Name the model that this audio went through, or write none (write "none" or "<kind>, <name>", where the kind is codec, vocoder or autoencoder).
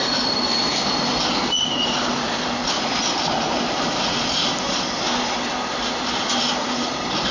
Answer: none